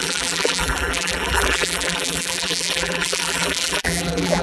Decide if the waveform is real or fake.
fake